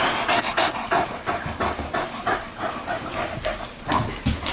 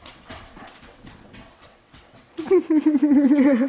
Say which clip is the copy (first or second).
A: second